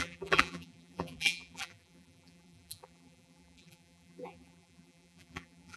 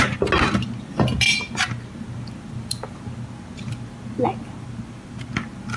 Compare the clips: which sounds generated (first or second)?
first